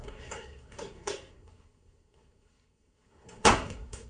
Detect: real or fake fake